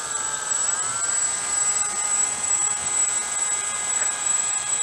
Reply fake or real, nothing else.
fake